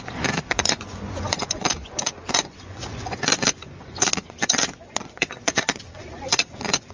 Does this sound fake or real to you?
fake